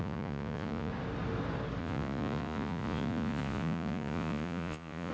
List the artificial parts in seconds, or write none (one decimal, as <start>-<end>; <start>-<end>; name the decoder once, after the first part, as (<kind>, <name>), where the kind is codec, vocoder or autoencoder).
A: 0.0-0.9 (vocoder, Vocos); 1.8-5.1

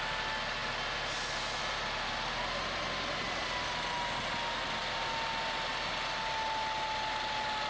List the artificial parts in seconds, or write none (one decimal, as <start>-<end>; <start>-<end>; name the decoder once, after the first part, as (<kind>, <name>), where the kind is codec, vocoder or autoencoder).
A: none

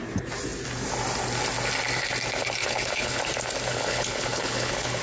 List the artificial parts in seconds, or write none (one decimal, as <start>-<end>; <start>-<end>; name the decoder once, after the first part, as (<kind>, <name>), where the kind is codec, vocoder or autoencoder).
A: 2.6-3.2 (codec, HILCodec); 3.7-5.0

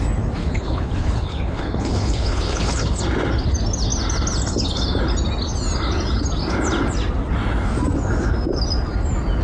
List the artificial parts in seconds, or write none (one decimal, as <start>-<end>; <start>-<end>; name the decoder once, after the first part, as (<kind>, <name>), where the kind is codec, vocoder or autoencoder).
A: 0.4-3.0 (codec, HILCodec)

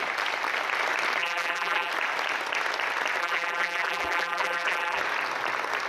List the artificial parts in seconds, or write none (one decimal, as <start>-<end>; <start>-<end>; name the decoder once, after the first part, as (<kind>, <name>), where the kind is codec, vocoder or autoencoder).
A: 1.2-1.9 (vocoder, BigVGAN v2); 3.2-5.0

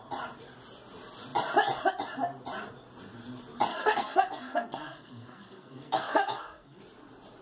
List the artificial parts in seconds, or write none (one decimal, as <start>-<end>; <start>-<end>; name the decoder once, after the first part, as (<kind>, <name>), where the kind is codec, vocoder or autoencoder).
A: 3.7-6.8 (codec, SNAC)

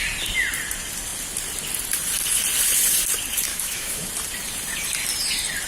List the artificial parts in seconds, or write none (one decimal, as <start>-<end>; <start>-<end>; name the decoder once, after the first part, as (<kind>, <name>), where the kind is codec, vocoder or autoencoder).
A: 3.5-4.1 (autoencoder, DAC-VAE)

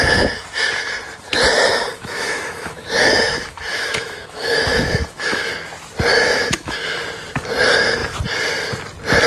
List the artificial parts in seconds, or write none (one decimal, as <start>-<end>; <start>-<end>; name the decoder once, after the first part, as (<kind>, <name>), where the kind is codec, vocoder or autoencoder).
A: 1.9-5.5 (autoencoder, DAC-VAE); 6.1-7.0